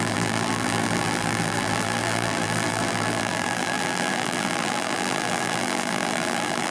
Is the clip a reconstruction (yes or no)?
yes